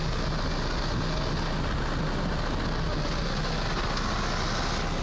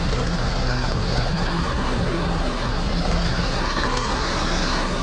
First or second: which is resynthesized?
second